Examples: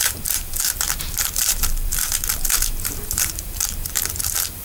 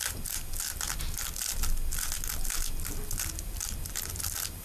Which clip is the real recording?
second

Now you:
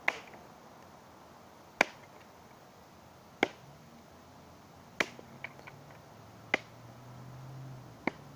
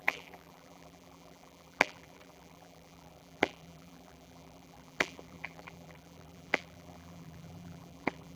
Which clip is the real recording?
first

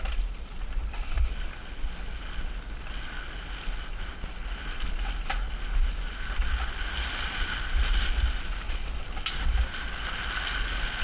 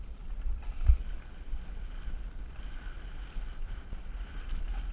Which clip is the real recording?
first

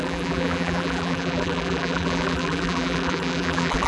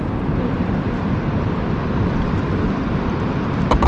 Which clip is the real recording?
second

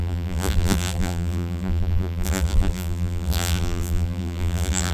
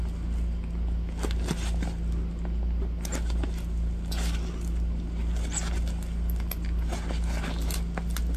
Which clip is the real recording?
second